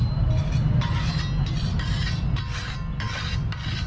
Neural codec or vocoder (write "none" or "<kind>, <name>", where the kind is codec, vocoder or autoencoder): none